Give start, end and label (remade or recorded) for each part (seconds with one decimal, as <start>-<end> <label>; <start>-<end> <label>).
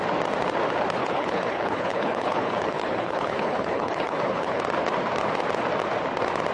0.0-1.0 recorded; 1.0-4.6 remade; 4.6-6.5 recorded